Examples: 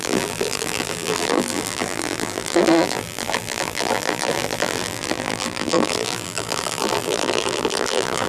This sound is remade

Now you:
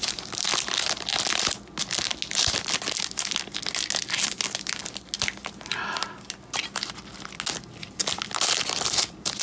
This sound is recorded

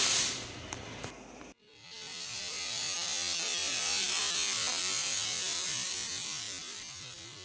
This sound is remade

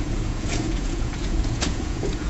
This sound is remade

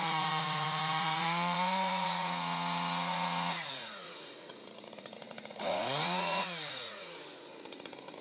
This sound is remade